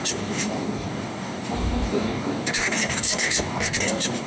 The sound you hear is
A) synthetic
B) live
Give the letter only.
A